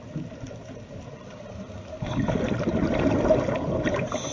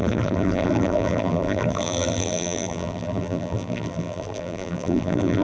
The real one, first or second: first